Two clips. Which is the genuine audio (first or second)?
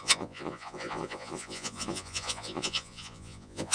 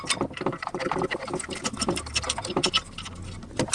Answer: second